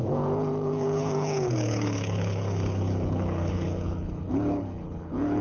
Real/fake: fake